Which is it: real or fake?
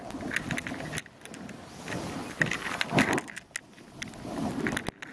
real